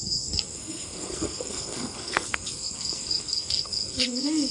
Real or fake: fake